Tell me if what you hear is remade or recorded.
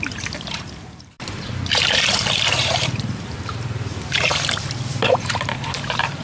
remade